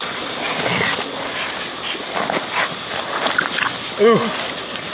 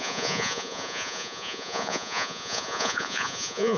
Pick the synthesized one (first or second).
second